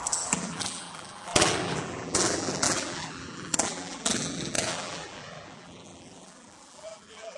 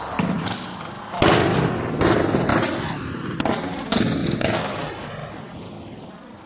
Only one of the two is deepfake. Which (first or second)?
first